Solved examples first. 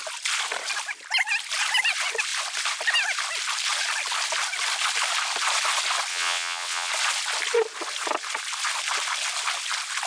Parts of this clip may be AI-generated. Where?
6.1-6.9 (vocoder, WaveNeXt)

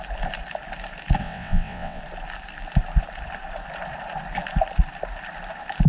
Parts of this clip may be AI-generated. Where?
1.2-2.0 (vocoder, WaveNeXt)